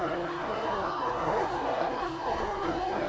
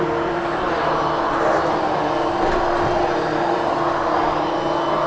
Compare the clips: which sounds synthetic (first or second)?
first